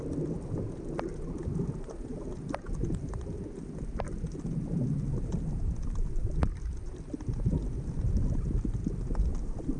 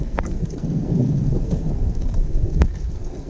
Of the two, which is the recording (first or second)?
first